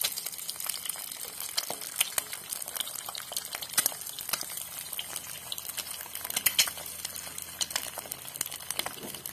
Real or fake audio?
real